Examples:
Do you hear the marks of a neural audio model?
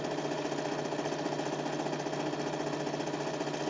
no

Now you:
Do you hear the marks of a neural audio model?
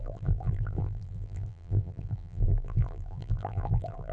yes